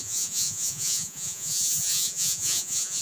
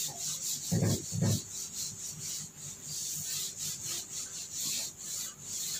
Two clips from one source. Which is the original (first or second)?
second